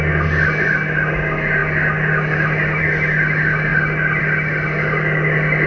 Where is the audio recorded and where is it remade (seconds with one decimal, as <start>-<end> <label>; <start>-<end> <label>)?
0.0-5.7 recorded